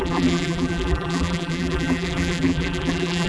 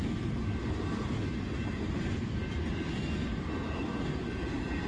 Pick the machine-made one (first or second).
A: first